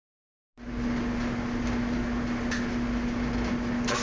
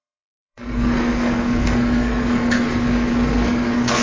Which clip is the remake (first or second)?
second